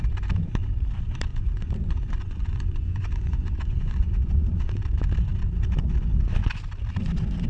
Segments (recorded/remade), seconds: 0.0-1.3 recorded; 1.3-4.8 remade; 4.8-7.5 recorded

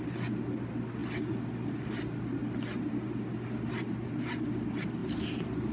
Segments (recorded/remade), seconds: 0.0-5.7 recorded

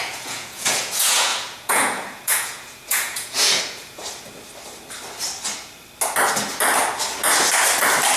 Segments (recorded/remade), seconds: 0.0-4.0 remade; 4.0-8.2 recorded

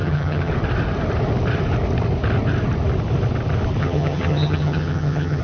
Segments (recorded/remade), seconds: 0.0-0.5 remade; 0.5-3.8 recorded; 3.8-5.4 remade

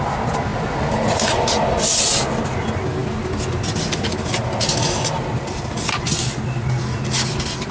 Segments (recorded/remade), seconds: 0.0-7.7 recorded

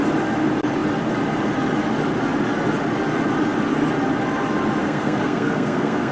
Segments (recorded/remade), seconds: 0.0-4.8 recorded; 4.8-6.1 remade

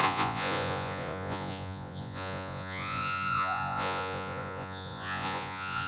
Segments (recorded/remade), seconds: 0.0-5.9 remade